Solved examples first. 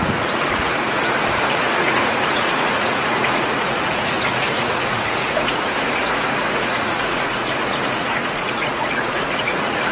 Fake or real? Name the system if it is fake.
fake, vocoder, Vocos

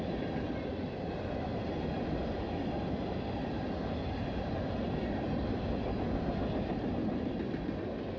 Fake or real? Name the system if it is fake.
real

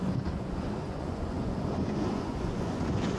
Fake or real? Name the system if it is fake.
fake, vocoder, Vocos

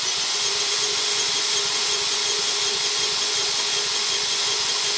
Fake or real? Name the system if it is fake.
fake, vocoder, Vocos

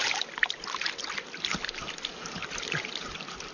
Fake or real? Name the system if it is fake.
real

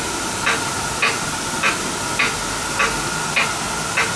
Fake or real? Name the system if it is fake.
real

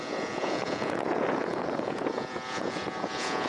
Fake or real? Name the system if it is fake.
fake, vocoder, Vocos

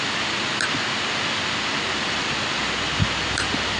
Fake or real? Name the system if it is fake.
real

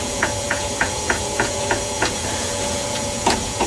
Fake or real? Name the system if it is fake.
fake, vocoder, Vocos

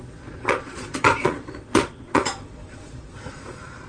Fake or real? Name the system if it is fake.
fake, vocoder, Vocos